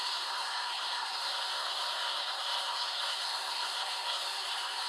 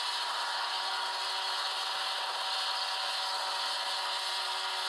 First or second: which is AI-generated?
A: first